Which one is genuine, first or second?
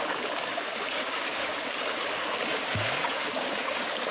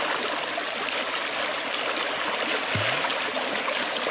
second